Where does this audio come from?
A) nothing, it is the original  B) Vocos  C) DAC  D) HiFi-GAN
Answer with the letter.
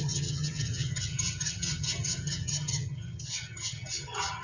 D